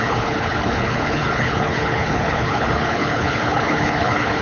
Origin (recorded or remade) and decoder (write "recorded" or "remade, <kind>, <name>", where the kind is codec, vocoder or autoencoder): remade, codec, HILCodec